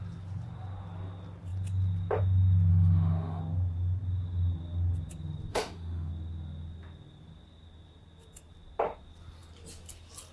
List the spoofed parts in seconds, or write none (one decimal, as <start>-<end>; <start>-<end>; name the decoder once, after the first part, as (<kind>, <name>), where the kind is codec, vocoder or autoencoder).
2.7-3.4 (autoencoder, DAC-VAE); 5.5-6.1